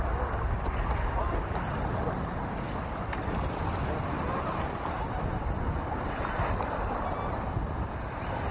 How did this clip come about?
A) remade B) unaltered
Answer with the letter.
B